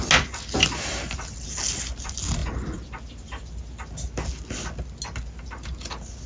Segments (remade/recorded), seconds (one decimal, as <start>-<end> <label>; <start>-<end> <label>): 0.0-6.3 recorded